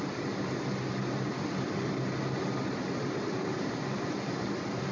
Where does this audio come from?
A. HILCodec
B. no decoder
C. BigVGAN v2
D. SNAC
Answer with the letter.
B